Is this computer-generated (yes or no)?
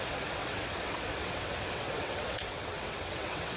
yes